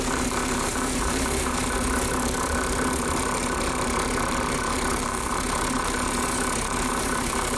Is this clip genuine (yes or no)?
no